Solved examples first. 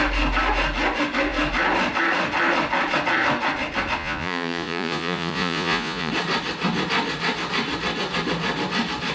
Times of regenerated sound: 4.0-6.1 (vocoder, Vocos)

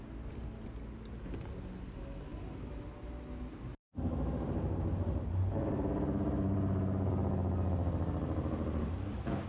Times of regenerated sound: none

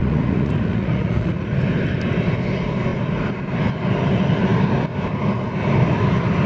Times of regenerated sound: 0.0-1.5 (vocoder, Vocos)

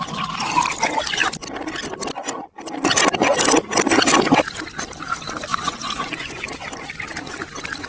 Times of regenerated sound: 5.5-6.5 (vocoder, Vocos)